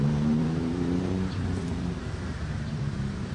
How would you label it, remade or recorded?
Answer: remade